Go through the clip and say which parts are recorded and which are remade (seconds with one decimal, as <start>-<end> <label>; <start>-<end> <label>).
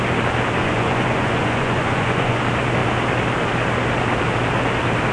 0.0-0.6 recorded; 0.6-2.4 remade; 2.4-5.1 recorded